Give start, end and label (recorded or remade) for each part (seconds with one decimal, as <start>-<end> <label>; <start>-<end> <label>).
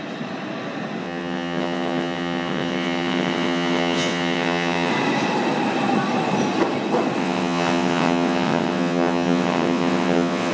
0.0-1.0 recorded; 1.0-4.9 remade; 4.9-7.2 recorded; 7.2-10.5 remade